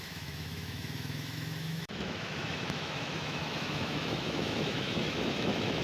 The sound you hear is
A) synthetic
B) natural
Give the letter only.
A